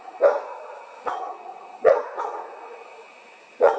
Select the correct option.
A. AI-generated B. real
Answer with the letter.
A